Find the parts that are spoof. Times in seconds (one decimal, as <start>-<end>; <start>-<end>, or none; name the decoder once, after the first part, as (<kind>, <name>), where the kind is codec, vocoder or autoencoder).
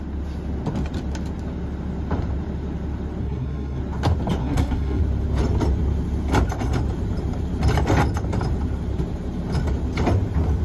3.2-3.8 (codec, SNAC); 4.4-5.0